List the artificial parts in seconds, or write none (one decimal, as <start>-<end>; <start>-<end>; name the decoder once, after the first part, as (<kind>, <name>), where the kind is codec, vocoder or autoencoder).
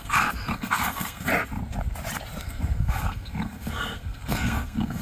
0.0-1.3 (codec, SNAC); 2.4-5.0